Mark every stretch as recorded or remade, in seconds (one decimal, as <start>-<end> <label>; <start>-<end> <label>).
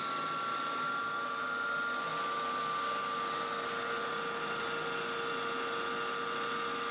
0.0-6.9 recorded